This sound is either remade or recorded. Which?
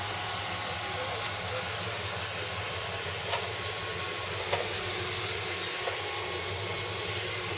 recorded